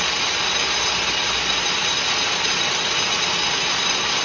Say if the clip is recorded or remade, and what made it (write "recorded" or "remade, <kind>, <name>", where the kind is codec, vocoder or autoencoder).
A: recorded